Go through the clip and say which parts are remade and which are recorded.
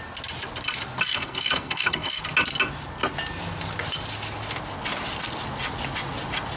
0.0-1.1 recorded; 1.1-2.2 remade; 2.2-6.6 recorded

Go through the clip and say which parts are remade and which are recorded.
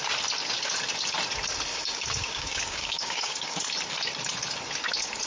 0.0-1.7 recorded; 1.7-3.6 remade; 3.6-5.3 recorded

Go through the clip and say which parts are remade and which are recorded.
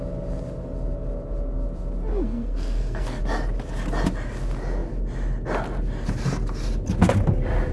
0.0-2.1 recorded; 2.1-3.2 remade; 3.2-7.7 recorded